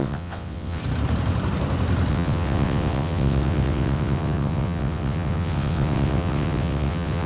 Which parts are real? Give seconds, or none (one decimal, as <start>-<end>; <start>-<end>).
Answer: 0.8-2.1